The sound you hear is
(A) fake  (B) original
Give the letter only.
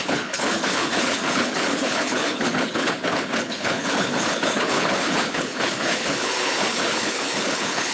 A